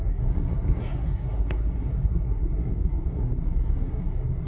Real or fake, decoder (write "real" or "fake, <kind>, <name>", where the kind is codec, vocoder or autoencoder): fake, codec, SNAC